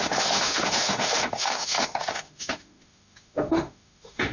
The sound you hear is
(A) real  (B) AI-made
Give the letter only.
B